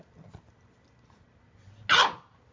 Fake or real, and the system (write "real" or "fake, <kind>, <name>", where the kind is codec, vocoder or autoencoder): real